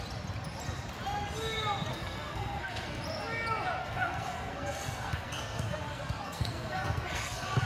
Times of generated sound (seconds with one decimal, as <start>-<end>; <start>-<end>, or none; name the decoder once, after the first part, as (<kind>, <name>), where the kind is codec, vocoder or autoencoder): 1.9-3.0 (codec, SNAC); 3.8-7.7